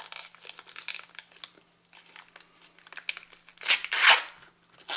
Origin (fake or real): real